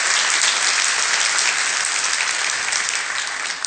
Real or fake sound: real